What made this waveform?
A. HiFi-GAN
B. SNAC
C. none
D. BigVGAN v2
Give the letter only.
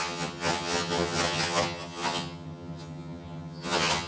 A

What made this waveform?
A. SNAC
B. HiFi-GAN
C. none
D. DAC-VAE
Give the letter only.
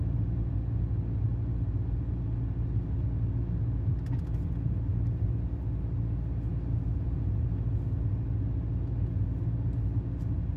C